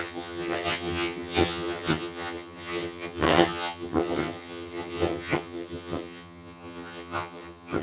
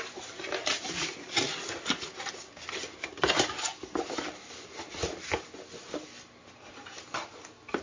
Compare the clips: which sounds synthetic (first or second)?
first